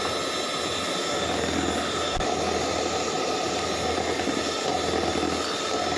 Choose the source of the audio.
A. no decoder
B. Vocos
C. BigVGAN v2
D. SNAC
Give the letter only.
A